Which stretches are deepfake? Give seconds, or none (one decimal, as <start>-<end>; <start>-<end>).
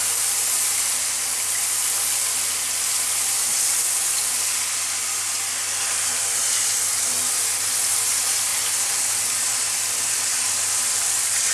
none